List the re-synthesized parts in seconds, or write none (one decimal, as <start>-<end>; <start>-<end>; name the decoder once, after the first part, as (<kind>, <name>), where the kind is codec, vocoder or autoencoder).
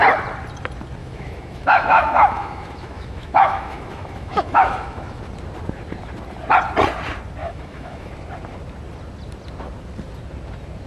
1.0-5.2 (autoencoder, DAC-VAE); 7.4-8.1